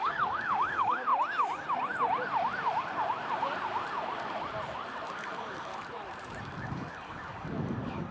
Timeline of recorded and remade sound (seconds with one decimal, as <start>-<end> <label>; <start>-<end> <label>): 0.0-1.1 remade; 1.1-5.1 recorded; 5.1-5.7 remade; 5.7-6.4 recorded; 6.4-8.1 remade